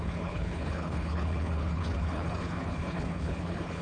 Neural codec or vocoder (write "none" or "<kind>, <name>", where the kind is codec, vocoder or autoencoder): codec, HILCodec